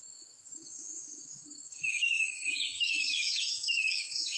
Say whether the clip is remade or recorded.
remade